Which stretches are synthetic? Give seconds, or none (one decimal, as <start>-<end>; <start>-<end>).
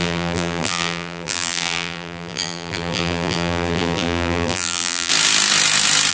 0.0-5.1